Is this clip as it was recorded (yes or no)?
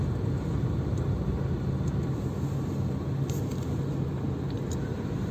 yes